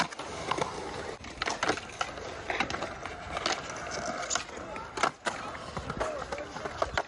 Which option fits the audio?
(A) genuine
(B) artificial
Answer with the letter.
A